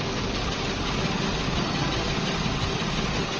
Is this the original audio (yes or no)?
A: yes